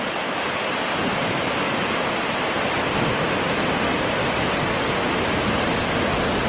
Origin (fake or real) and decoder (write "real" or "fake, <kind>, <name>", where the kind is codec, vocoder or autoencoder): real